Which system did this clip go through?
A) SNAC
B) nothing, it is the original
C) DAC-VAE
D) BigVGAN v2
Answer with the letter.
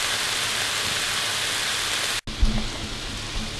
B